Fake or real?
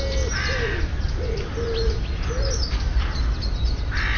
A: real